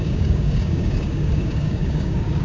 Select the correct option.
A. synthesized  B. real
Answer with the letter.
A